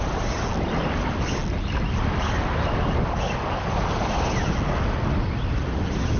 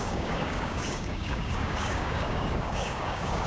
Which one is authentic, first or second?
first